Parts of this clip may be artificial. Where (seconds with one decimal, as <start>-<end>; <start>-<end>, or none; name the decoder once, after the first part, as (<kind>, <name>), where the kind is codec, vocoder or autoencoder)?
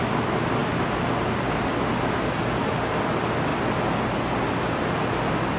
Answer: none